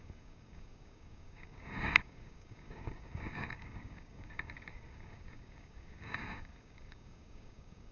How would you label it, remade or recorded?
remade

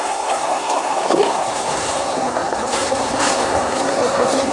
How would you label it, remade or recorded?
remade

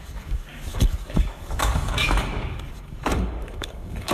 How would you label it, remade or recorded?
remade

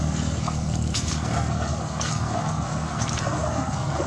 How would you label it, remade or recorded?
remade